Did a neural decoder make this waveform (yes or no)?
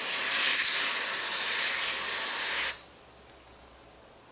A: no